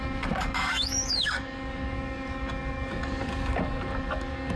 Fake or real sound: fake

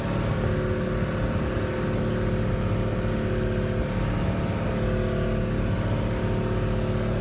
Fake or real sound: real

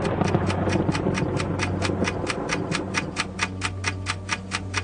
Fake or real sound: real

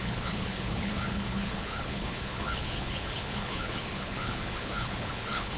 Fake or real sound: fake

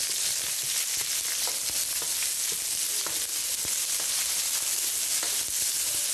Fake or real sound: real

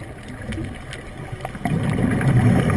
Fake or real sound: real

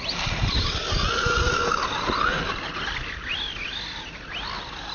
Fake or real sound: real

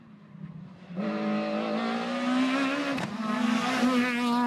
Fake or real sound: real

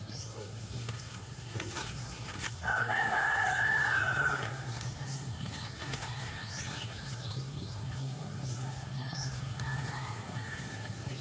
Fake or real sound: fake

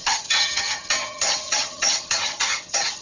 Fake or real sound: fake